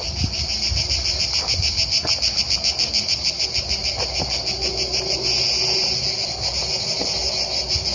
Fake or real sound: real